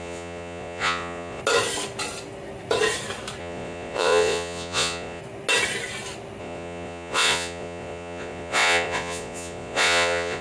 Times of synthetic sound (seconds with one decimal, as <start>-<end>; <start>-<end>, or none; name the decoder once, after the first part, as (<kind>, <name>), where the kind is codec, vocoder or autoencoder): 0.0-1.4 (vocoder, Vocos); 3.4-5.2; 6.4-10.4